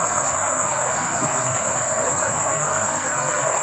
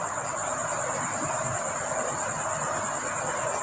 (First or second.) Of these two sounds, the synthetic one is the first